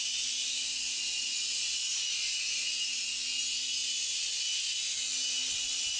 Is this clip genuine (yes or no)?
yes